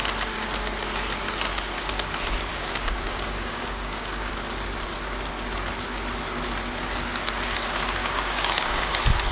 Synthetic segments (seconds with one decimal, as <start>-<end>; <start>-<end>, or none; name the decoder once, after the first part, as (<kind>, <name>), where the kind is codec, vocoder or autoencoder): 2.5-4.3 (codec, DAC); 8.0-8.9